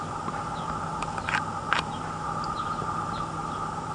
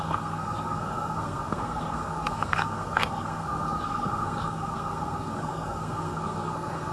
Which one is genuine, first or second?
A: first